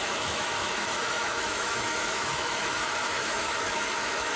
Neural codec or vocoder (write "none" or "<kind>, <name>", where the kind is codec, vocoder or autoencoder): autoencoder, DAC-VAE